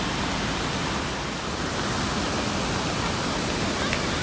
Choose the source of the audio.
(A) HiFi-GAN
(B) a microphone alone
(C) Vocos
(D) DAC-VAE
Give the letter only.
B